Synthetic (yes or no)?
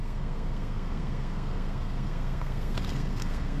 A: yes